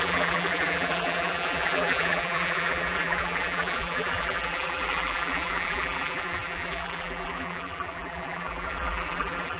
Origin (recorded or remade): remade